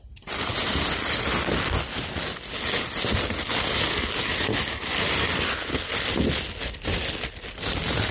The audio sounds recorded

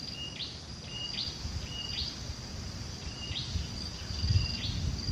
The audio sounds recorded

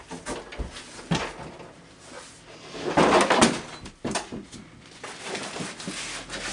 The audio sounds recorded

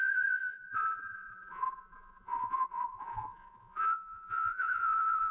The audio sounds remade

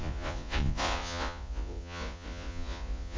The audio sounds remade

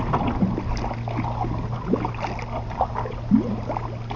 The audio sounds recorded